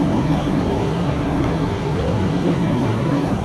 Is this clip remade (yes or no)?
yes